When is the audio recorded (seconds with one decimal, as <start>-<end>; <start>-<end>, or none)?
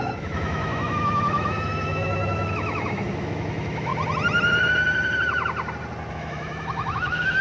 3.9-6.1